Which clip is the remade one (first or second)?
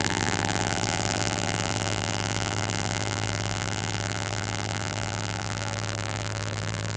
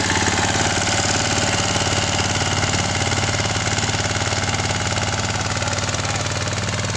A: first